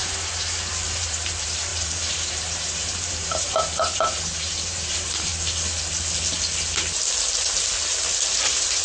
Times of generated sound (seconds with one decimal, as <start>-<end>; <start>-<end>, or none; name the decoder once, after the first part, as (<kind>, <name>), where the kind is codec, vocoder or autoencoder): 0.9-5.3 (vocoder, BigVGAN v2); 7.8-8.8